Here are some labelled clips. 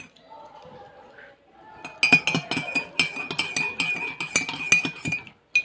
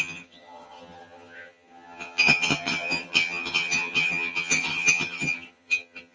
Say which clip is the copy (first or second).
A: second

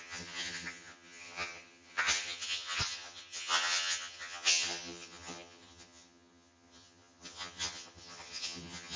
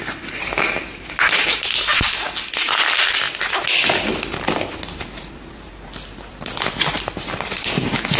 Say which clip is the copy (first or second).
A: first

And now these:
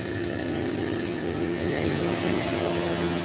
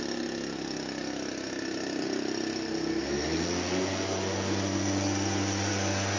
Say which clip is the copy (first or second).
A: first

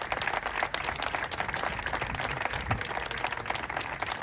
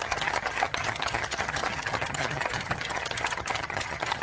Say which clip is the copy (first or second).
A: second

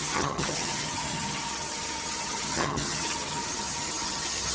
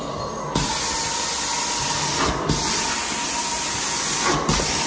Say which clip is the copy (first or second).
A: first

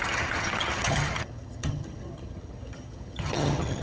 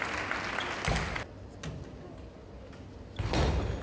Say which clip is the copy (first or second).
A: first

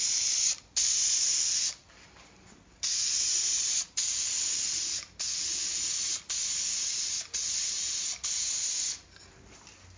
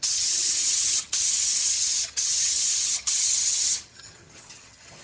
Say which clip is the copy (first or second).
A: second